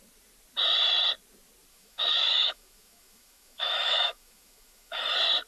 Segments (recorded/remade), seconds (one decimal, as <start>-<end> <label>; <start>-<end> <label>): 0.0-1.7 recorded; 1.7-5.0 remade; 5.0-5.5 recorded